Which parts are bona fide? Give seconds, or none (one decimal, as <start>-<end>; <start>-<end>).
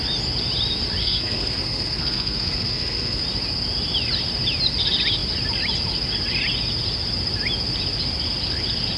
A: 0.0-1.0; 3.2-9.0